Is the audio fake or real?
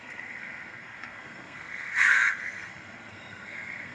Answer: fake